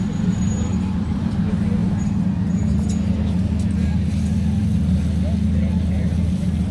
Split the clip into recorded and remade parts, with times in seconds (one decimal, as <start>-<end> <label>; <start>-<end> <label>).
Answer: 0.0-0.7 recorded; 0.7-1.3 remade; 1.3-6.7 recorded